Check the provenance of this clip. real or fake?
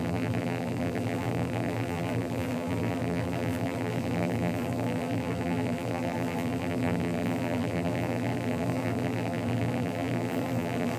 fake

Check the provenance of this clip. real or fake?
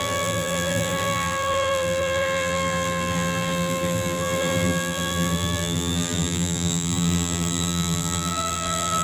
fake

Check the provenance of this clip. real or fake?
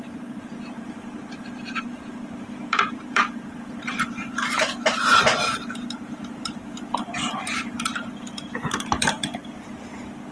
fake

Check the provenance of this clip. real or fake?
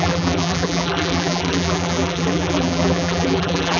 fake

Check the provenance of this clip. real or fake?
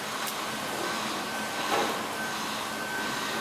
real